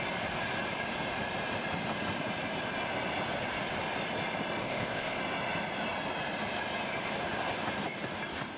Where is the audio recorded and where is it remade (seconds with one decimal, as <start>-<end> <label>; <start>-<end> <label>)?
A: 0.0-4.6 recorded; 4.6-5.2 remade; 5.2-8.6 recorded